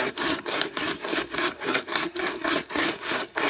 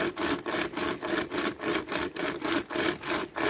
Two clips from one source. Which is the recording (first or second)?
second